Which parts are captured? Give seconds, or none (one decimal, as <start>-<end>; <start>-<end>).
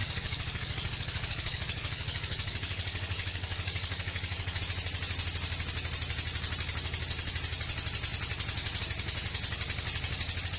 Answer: 4.6-10.6